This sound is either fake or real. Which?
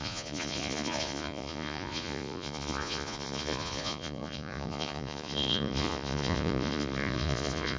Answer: fake